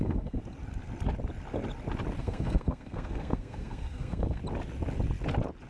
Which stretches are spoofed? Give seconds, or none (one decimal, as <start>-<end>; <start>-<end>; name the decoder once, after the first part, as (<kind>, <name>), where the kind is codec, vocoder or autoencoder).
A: 0.0-0.4 (codec, SNAC); 2.2-4.4